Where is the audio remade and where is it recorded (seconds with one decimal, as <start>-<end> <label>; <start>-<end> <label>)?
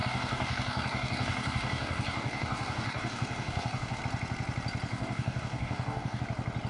0.0-4.0 remade; 4.0-4.9 recorded; 4.9-6.2 remade; 6.2-6.7 recorded